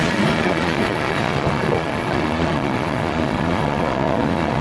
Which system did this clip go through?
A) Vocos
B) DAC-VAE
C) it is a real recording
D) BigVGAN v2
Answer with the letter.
A